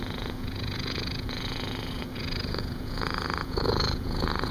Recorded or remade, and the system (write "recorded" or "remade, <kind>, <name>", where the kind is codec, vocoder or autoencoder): remade, vocoder, Vocos